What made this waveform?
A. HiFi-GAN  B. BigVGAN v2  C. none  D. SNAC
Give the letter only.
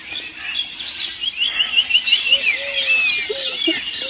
C